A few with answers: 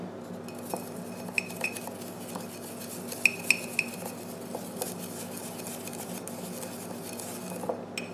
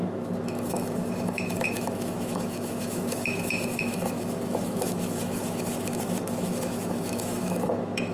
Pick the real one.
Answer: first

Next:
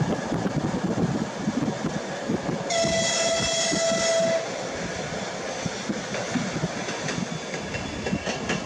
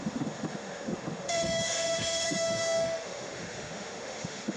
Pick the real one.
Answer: first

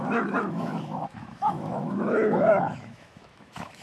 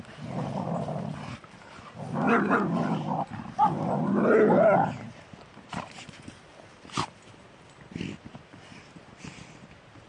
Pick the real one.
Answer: second